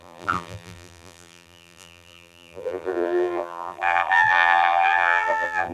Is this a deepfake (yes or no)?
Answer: yes